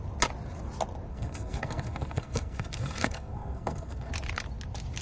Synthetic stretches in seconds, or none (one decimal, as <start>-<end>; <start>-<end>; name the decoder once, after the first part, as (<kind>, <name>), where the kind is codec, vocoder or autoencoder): 1.1-4.1 (codec, SNAC)